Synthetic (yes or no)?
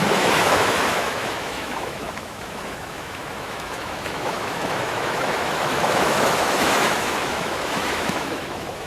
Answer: yes